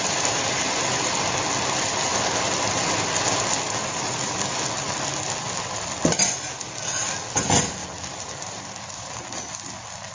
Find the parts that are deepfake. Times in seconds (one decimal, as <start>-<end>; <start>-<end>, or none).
7.8-9.1